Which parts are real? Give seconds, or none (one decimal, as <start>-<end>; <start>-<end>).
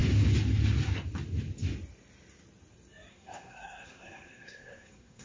0.0-3.1